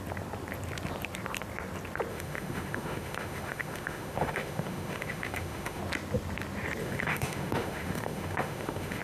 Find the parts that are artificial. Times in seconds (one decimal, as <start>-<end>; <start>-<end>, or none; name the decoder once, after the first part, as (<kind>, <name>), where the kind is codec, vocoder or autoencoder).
2.1-5.8 (autoencoder, DAC-VAE); 6.8-9.0